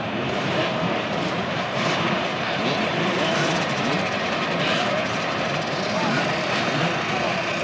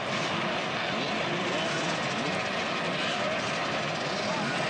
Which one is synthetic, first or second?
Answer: first